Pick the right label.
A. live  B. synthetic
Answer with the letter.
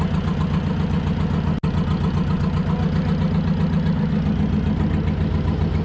A